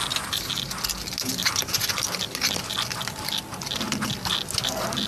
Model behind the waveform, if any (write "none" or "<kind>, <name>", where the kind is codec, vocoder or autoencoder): none